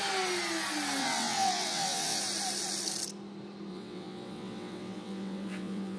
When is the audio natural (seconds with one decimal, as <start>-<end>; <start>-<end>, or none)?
0.0-1.0; 2.2-3.7